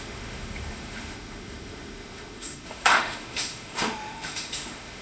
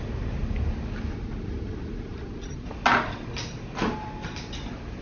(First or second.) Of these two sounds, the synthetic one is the first